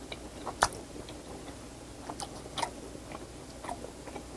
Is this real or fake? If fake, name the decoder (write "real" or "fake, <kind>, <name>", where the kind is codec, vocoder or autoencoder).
real